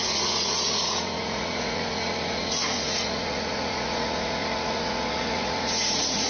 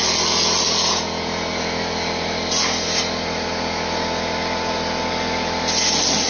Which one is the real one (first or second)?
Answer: second